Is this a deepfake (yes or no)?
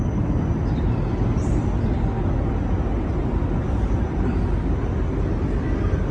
no